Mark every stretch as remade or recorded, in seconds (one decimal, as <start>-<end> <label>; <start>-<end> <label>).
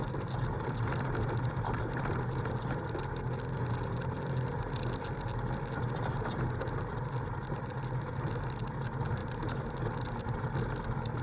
0.0-11.2 recorded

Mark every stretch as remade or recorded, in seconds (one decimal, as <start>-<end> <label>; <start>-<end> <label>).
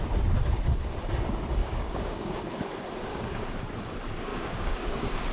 0.0-1.6 recorded; 1.6-2.4 remade; 2.4-3.1 recorded; 3.1-3.6 remade; 3.6-4.3 recorded; 4.3-5.3 remade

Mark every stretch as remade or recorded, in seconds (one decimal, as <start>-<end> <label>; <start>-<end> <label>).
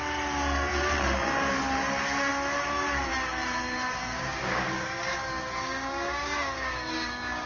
0.0-4.0 recorded; 4.0-7.5 remade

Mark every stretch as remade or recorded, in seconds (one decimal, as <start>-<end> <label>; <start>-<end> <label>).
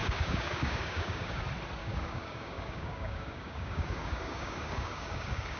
0.0-1.4 remade; 1.4-1.8 recorded; 1.8-5.6 remade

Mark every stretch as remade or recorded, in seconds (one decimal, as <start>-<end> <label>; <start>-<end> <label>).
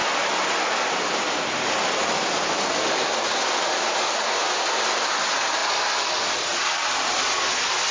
0.0-7.9 recorded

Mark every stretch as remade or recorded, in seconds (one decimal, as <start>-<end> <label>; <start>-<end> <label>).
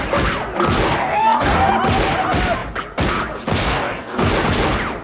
0.0-1.0 recorded; 1.0-1.7 remade; 1.7-3.6 recorded; 3.6-4.3 remade; 4.3-5.0 recorded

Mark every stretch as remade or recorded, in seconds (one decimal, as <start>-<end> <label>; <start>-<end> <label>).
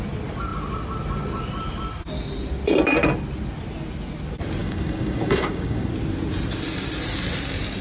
0.0-4.6 recorded; 4.6-5.9 remade; 5.9-7.8 recorded